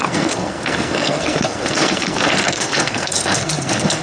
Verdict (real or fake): fake